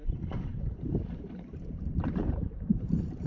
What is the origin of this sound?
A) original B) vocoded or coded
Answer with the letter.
B